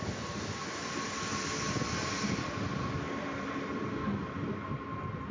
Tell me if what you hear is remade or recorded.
recorded